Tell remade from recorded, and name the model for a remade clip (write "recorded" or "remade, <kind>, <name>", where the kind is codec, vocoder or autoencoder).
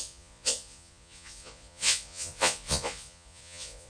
remade, vocoder, Vocos